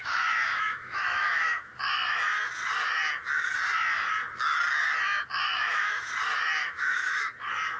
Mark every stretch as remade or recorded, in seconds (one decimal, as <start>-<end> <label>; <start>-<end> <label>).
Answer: 0.0-1.7 remade; 1.7-5.5 recorded; 5.5-6.1 remade; 6.1-6.6 recorded; 6.6-7.2 remade; 7.2-7.8 recorded